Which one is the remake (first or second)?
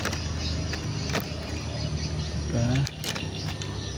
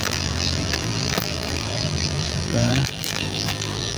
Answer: second